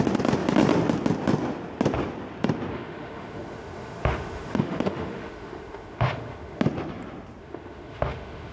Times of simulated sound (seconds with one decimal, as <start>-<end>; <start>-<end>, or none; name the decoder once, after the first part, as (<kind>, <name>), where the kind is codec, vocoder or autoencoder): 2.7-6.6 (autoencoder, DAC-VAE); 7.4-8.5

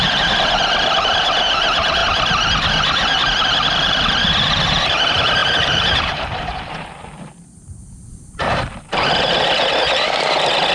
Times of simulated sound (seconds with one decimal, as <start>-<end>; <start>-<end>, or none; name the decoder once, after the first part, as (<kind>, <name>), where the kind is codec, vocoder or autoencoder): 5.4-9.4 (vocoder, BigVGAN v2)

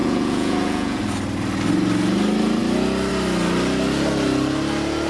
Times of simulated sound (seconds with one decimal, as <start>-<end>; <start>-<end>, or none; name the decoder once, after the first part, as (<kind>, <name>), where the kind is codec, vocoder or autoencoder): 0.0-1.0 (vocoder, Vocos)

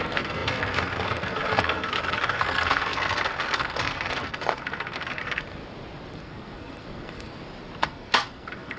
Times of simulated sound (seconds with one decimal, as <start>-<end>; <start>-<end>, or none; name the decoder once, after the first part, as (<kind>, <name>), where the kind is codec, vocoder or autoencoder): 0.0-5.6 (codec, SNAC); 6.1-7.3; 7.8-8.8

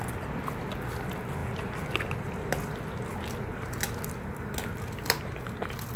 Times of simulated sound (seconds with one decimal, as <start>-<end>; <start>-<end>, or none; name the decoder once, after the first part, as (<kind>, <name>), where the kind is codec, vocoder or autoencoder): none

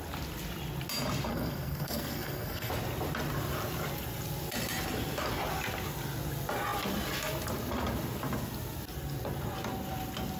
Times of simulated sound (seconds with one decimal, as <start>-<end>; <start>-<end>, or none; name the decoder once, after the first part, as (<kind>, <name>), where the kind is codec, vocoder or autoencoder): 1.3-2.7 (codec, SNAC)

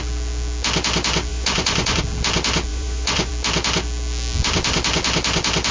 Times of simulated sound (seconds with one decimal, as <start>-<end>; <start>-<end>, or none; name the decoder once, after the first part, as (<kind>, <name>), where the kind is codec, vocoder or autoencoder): 1.3-2.0 (vocoder, Vocos); 2.7-3.3

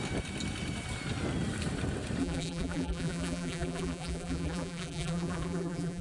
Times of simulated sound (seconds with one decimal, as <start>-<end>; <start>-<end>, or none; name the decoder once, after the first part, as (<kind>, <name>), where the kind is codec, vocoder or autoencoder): 2.2-6.0 (vocoder, BigVGAN v2)